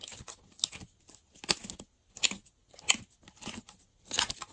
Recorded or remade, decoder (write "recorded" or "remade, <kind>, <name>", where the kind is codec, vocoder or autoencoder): recorded